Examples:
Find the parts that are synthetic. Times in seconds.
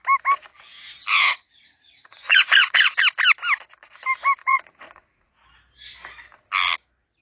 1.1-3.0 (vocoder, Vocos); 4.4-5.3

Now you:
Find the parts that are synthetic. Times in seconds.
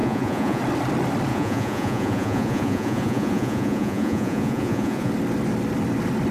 0.0-0.6 (vocoder, Vocos); 1.3-5.1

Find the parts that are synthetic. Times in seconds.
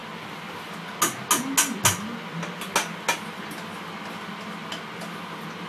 none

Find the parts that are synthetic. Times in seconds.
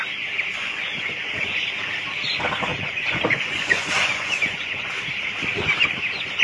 0.5-1.6 (vocoder, Vocos); 2.7-4.8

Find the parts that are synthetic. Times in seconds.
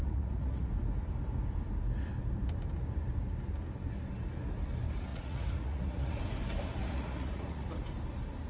0.0-0.7 (vocoder, Vocos); 5.1-6.2; 6.8-7.8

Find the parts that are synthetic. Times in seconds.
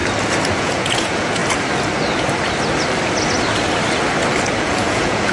0.6-1.4 (vocoder, Vocos); 4.6-5.3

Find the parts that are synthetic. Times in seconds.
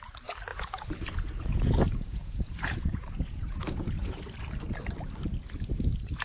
0.5-4.2 (vocoder, Vocos)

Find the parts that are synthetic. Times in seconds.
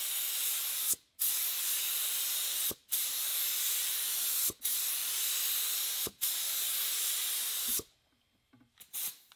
none